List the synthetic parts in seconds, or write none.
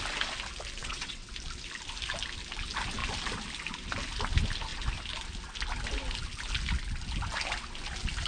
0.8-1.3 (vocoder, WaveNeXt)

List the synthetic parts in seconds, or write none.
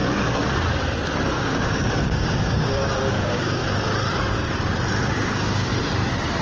1.4-3.6 (codec, DAC); 5.0-5.7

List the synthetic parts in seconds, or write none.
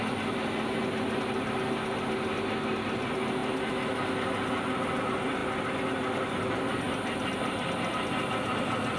none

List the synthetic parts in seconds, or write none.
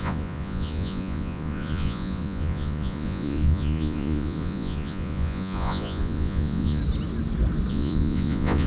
0.0-6.8 (vocoder, Vocos); 7.7-8.7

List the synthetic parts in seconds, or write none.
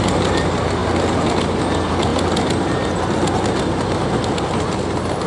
none